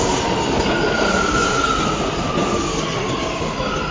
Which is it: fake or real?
real